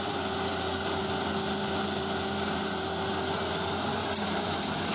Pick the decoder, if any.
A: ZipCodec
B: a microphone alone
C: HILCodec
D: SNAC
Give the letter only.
B